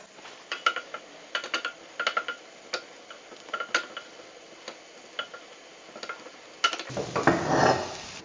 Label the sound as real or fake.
real